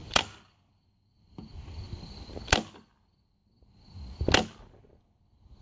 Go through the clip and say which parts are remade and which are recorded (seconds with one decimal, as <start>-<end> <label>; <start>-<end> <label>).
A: 0.0-0.7 remade; 0.7-1.5 recorded; 1.5-2.9 remade; 2.9-5.6 recorded